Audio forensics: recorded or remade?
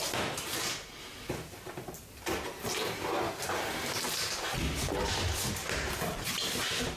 recorded